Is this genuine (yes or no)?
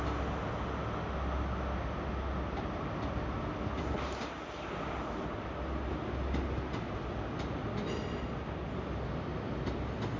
yes